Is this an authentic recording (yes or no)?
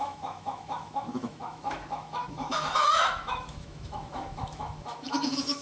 no